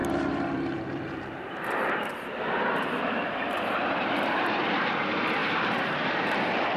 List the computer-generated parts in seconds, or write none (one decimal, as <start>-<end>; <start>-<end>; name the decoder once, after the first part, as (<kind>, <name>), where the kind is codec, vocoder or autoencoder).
0.0-6.8 (vocoder, BigVGAN v2)